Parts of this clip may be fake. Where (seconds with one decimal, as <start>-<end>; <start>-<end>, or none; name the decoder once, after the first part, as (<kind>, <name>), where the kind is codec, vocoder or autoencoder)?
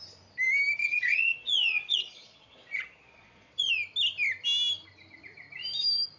0.8-3.7 (vocoder, Vocos)